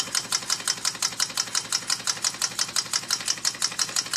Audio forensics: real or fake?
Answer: real